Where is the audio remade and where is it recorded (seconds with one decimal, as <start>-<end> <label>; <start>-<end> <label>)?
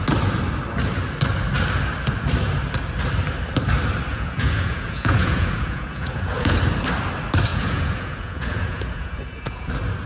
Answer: 0.0-4.1 recorded; 4.1-6.6 remade; 6.6-7.5 recorded; 7.5-9.7 remade; 9.7-10.1 recorded